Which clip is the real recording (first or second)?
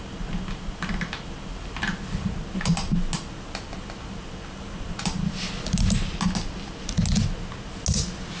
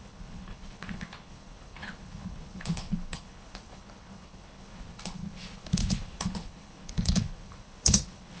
first